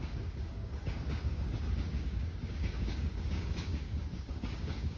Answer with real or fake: fake